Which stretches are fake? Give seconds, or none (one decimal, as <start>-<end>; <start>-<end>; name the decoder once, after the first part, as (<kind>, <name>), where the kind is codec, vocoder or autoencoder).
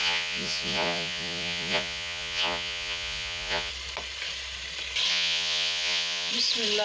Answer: 0.0-3.7 (vocoder, Vocos); 5.1-6.3